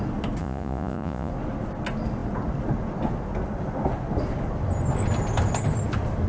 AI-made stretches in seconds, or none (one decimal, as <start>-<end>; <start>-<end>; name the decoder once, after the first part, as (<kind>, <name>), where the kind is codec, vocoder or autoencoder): 0.4-1.3 (vocoder, Vocos)